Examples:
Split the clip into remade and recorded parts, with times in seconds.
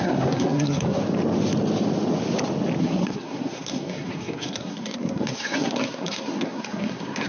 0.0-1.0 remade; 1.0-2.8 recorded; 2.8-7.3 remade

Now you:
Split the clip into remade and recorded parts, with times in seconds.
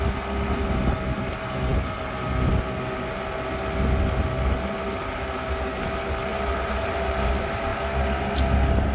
0.0-6.3 recorded; 6.3-7.3 remade; 7.3-8.9 recorded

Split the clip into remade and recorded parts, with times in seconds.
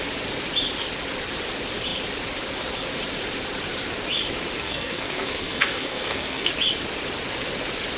0.0-4.6 recorded; 4.6-6.5 remade; 6.5-8.0 recorded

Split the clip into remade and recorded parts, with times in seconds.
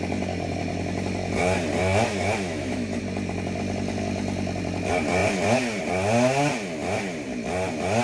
0.0-1.8 recorded; 1.8-3.0 remade; 3.0-8.0 recorded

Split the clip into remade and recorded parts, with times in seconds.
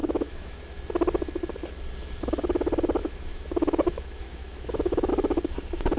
0.0-0.6 remade; 0.6-3.0 recorded; 3.0-5.1 remade; 5.1-6.0 recorded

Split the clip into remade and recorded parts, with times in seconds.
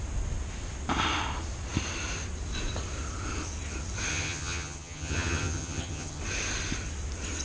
0.0-4.1 recorded; 4.1-6.2 remade; 6.2-7.4 recorded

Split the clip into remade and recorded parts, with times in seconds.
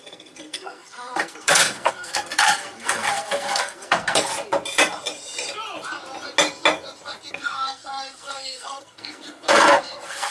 0.0-4.3 remade; 4.3-7.3 recorded; 7.3-10.3 remade